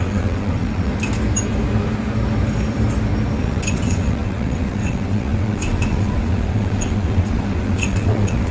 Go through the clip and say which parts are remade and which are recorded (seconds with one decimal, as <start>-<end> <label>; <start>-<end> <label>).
0.0-0.9 remade; 0.9-3.4 recorded; 3.4-8.5 remade